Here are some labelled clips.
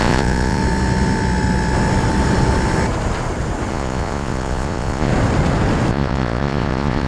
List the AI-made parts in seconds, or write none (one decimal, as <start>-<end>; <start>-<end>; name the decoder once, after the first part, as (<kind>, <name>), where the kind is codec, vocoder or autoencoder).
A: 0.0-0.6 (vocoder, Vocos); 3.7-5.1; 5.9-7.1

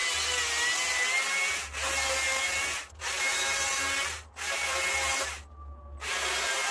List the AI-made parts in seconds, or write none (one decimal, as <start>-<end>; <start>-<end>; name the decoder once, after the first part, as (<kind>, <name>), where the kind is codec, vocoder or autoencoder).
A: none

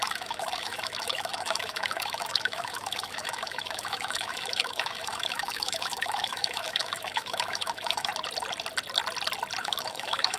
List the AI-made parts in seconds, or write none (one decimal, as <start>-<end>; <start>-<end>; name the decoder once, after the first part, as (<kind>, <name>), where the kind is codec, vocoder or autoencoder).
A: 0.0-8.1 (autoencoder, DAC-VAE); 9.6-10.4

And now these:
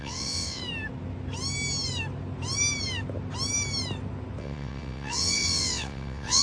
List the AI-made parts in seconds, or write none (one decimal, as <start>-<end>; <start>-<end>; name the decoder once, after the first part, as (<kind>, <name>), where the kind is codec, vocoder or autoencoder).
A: 0.0-0.6 (vocoder, WaveNeXt); 4.4-6.4

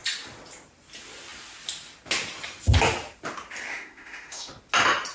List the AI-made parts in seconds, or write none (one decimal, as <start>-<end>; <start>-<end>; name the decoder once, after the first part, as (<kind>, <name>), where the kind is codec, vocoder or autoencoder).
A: 3.7-4.5 (autoencoder, DAC-VAE)

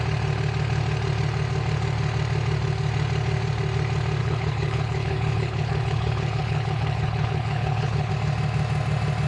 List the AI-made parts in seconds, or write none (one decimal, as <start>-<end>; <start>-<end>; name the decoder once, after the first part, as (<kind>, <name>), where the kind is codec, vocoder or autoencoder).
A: 4.2-8.1 (codec, HILCodec)